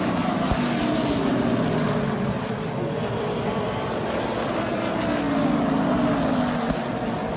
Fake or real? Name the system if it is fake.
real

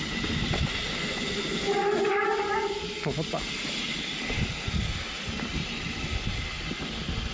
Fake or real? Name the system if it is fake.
real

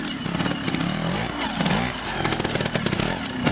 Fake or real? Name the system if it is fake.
real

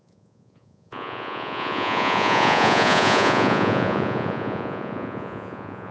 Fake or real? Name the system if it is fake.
fake, vocoder, Vocos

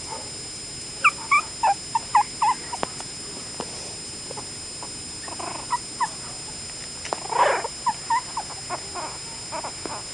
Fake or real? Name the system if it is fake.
real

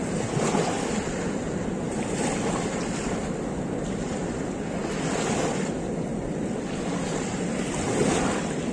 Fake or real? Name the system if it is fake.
real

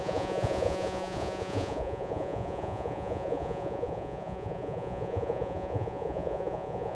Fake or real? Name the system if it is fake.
fake, vocoder, Vocos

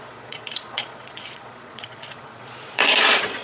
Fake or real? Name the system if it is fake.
fake, vocoder, Vocos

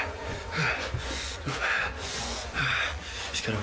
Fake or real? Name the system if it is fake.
fake, vocoder, Vocos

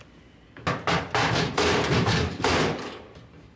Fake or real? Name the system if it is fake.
real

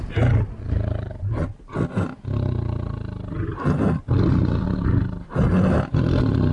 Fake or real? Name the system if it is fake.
real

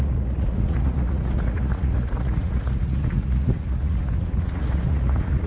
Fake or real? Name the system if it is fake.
fake, vocoder, Vocos